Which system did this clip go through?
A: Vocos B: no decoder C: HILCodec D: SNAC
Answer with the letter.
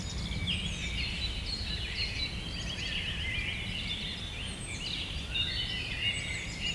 B